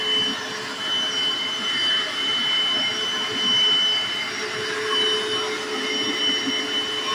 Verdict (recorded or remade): recorded